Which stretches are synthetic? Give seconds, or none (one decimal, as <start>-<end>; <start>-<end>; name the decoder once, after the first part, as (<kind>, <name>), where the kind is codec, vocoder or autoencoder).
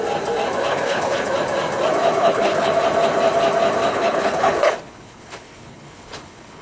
0.7-1.3 (codec, HILCodec); 2.2-2.7; 3.9-6.6